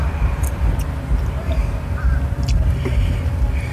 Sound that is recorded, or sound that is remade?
recorded